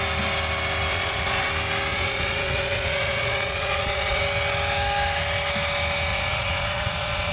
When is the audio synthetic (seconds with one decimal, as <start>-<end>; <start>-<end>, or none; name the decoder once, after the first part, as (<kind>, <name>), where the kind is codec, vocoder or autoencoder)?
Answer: 0.9-1.5 (vocoder, Vocos); 1.9-4.2; 6.1-7.3